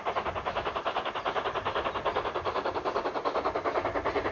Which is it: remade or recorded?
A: recorded